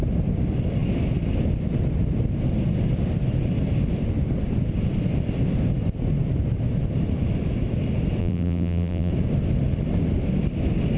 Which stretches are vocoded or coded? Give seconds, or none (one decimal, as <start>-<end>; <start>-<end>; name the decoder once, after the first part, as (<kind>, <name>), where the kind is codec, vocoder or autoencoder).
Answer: 8.2-9.1 (vocoder, BigVGAN v2)